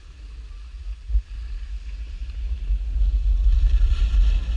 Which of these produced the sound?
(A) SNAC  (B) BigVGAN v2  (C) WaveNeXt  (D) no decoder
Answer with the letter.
D